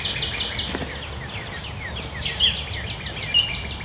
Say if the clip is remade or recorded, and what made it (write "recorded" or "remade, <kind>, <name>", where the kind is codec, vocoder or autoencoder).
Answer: recorded